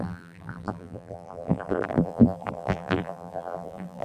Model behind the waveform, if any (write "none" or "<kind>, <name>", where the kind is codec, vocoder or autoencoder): vocoder, BigVGAN v2